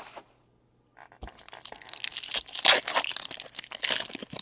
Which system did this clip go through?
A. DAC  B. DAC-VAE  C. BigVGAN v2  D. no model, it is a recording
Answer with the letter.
D